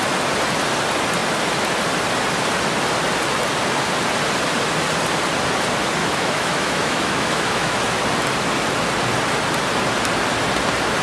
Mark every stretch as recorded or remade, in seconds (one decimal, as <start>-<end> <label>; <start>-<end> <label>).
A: 0.0-6.0 recorded; 6.0-7.8 remade; 7.8-11.0 recorded